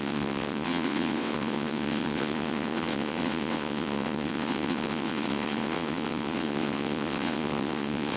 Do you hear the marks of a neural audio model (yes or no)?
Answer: yes